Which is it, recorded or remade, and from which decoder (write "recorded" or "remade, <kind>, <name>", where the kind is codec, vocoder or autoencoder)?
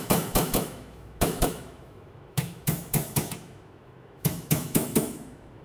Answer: remade, autoencoder, DAC-VAE